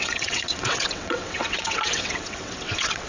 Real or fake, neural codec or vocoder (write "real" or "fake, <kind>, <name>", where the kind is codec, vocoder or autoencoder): fake, vocoder, WaveNeXt